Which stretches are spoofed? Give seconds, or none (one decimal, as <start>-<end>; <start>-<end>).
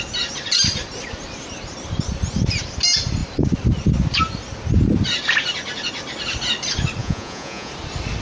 7.0-7.7